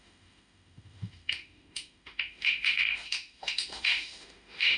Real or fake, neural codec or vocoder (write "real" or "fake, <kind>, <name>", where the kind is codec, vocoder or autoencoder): fake, autoencoder, DAC-VAE